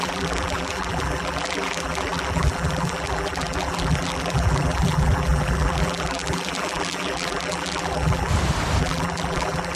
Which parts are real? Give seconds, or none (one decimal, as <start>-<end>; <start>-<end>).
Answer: 8.3-8.8

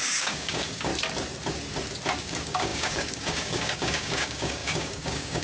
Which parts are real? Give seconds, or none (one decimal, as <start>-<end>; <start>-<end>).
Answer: 0.9-2.2

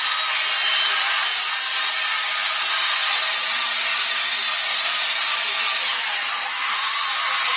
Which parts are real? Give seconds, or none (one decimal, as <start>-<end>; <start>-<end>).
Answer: 0.0-7.6

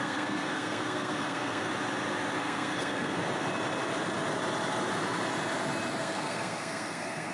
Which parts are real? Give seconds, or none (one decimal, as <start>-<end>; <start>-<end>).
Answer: 1.7-2.4; 3.2-6.0

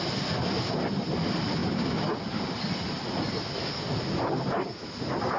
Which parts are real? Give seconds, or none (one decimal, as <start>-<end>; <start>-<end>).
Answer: 0.0-5.4

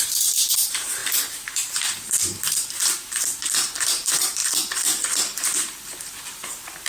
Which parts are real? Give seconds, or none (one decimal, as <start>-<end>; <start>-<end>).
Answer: 4.4-6.1

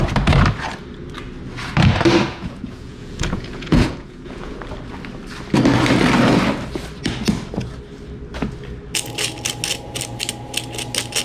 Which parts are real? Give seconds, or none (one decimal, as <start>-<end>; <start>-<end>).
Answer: 0.0-2.3; 4.6-11.2